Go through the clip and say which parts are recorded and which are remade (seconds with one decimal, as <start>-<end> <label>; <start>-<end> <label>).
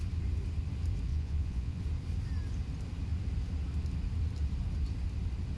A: 0.0-1.1 recorded; 1.1-1.8 remade; 1.8-5.6 recorded